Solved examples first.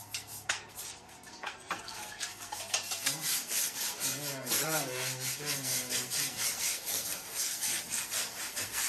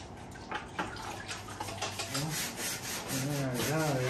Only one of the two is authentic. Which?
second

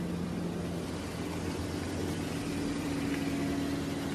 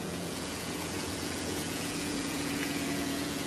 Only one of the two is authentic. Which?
first